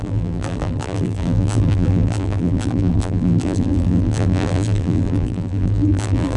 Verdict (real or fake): fake